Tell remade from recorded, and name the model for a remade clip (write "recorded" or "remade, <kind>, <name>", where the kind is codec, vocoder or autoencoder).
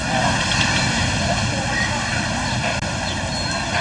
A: recorded